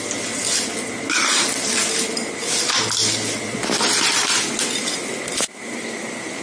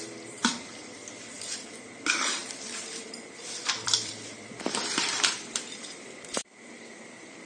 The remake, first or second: second